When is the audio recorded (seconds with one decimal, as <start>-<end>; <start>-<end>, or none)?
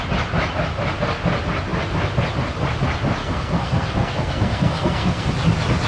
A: 0.0-3.2; 5.3-5.9